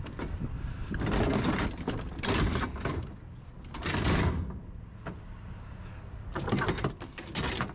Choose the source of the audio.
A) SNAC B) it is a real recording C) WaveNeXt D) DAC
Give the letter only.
B